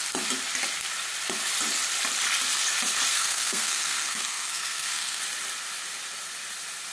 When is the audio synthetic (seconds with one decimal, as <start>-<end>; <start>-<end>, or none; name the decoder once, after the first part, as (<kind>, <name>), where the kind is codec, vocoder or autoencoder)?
3.1-5.2 (codec, SNAC)